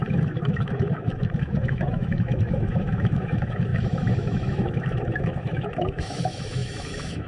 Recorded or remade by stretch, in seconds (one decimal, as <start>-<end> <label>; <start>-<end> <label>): 0.0-7.3 remade